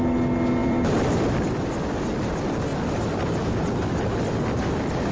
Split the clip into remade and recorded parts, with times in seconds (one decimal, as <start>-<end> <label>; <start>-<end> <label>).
0.0-0.6 recorded; 0.6-1.6 remade; 1.6-2.7 recorded; 2.7-4.0 remade; 4.0-5.1 recorded